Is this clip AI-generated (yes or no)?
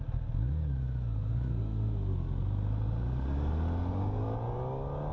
no